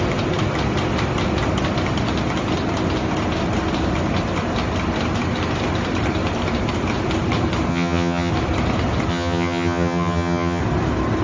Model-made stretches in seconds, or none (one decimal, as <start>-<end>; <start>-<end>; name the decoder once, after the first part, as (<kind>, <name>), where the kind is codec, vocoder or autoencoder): 7.7-8.3 (vocoder, HiFi-GAN); 9.1-10.6